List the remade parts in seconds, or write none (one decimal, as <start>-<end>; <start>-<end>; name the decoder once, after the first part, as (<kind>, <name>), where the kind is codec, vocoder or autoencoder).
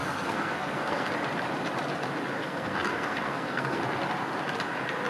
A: 0.0-1.1 (codec, SNAC); 2.4-3.8